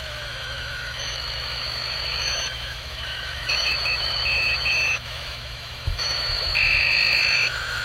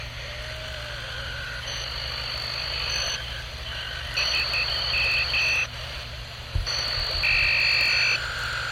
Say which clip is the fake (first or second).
first